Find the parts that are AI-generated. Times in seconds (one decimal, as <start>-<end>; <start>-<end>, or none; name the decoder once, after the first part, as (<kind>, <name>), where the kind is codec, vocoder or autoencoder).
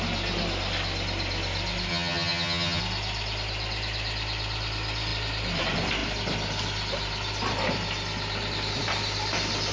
1.9-2.8 (vocoder, HiFi-GAN)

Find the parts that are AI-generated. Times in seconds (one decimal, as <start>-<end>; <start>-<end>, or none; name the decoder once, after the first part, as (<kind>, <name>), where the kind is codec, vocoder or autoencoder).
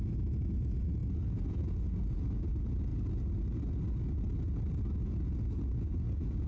0.0-2.9 (vocoder, Vocos); 5.0-6.5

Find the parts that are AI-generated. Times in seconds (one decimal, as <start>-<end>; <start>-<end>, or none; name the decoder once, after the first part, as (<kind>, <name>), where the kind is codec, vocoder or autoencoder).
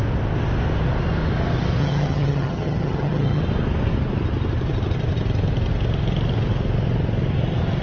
1.8-3.4 (vocoder, HiFi-GAN)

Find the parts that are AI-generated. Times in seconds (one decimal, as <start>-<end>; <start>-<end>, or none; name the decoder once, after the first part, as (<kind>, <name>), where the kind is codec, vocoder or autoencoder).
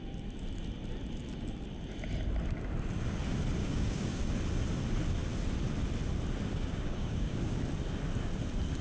3.6-4.2 (codec, DAC); 6.5-7.6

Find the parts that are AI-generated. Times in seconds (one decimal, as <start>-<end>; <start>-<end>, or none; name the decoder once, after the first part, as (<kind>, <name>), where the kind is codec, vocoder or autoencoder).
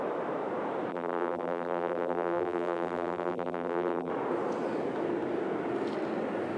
0.9-4.1 (vocoder, BigVGAN v2)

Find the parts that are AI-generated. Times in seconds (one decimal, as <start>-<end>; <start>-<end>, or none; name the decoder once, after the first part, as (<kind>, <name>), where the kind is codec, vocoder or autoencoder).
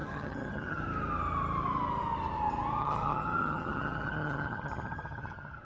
0.0-0.8 (vocoder, HiFi-GAN); 2.8-5.6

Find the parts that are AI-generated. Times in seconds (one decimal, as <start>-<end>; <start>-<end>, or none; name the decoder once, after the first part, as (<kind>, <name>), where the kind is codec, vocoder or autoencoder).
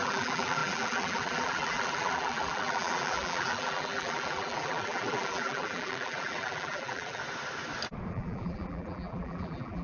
0.0-7.2 (vocoder, BigVGAN v2); 8.1-9.8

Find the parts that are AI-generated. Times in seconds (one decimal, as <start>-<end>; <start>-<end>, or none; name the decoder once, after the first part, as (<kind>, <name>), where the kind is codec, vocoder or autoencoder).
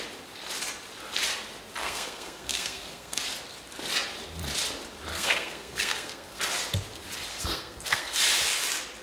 1.8-3.2 (codec, SNAC); 5.1-6.4; 7.3-8.2